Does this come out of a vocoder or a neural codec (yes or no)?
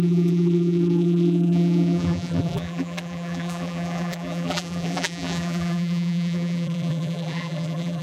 yes